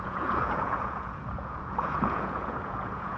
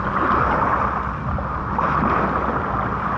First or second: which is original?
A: second